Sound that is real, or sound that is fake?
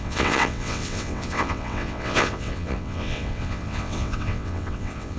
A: fake